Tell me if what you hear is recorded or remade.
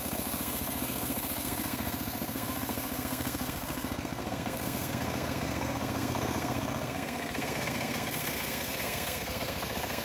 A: remade